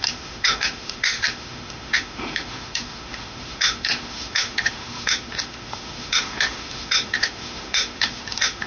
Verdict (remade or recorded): remade